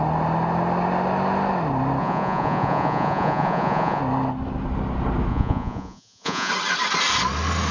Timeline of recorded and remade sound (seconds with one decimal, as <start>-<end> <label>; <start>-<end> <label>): 0.0-2.0 recorded; 2.0-4.0 remade; 4.0-5.3 recorded; 5.3-6.5 remade; 6.5-7.7 recorded